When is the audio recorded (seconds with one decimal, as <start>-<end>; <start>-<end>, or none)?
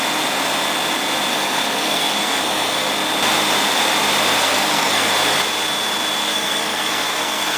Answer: 0.0-1.3; 2.9-4.4; 5.1-6.2